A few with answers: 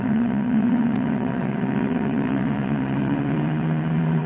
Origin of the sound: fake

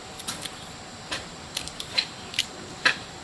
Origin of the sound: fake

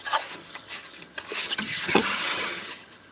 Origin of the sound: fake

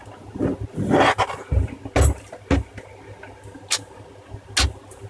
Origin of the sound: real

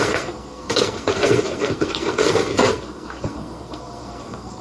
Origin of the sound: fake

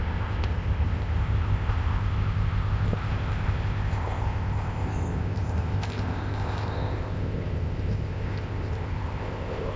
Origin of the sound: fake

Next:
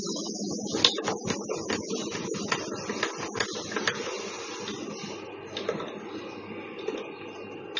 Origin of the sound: real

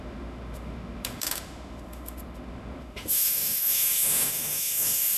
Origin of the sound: fake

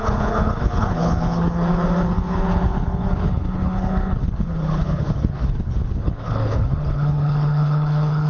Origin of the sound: fake